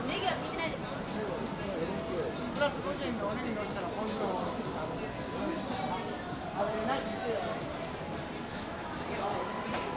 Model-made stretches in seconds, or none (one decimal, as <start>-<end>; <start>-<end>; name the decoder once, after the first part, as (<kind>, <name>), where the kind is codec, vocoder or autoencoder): 8.5-9.4 (autoencoder, DAC-VAE)